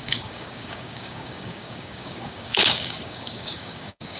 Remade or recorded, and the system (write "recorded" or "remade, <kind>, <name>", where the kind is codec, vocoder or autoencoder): remade, codec, DAC